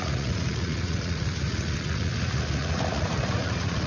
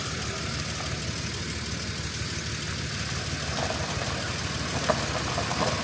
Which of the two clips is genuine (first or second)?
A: second